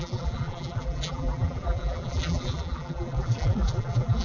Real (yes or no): no